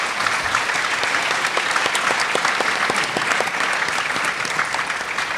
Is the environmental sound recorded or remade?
recorded